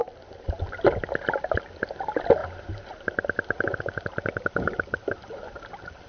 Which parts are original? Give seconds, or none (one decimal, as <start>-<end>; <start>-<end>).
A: 0.0-2.4